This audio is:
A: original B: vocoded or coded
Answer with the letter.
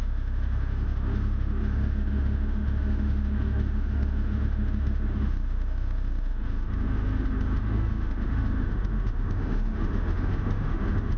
B